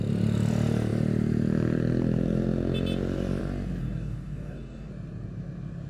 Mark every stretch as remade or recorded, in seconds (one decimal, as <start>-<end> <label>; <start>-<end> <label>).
0.0-3.8 recorded; 3.8-4.9 remade; 4.9-5.9 recorded